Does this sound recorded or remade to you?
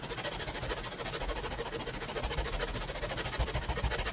recorded